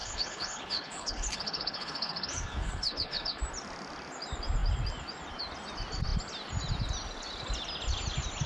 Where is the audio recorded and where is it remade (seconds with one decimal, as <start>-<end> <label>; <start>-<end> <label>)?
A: 0.0-3.4 remade; 3.4-8.5 recorded